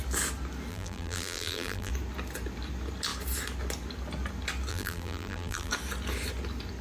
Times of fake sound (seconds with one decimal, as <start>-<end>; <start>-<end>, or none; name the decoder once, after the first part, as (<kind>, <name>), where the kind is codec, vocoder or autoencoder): 0.7-1.9 (vocoder, BigVGAN v2); 4.7-5.7